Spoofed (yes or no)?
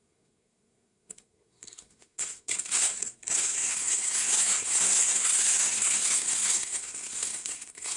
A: yes